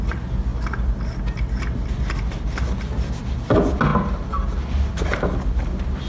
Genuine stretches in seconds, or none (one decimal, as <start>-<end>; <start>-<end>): 0.0-6.1